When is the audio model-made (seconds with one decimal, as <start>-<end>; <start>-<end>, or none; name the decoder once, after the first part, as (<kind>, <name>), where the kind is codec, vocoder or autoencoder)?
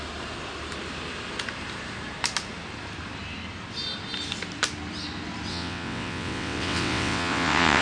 5.5-7.8 (vocoder, WaveNeXt)